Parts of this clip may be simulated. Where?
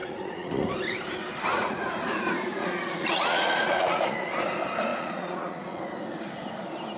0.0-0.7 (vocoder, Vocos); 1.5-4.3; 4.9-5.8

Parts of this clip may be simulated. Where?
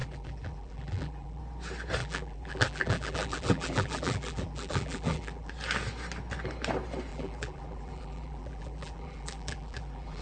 0.0-1.4 (vocoder, BigVGAN v2); 2.0-5.5; 7.1-10.2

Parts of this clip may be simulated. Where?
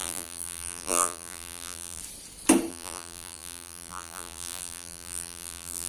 0.0-2.0 (vocoder, BigVGAN v2); 2.7-5.9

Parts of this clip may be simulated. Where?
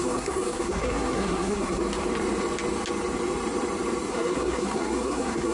0.0-1.8 (codec, SNAC); 4.1-5.5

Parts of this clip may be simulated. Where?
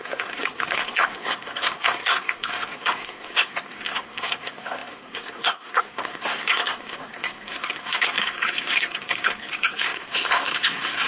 0.0-11.1 (codec, SNAC)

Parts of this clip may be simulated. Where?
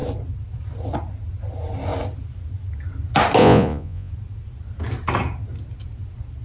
3.4-4.1 (vocoder, Vocos)